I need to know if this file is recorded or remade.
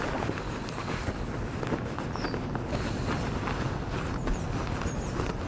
recorded